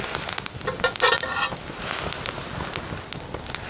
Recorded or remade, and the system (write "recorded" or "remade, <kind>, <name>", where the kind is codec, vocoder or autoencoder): recorded